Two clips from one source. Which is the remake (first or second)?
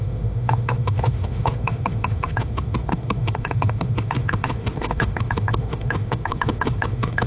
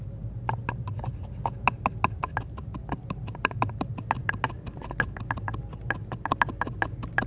first